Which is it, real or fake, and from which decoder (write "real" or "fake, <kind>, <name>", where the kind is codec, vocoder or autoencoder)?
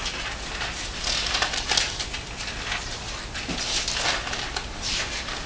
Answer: real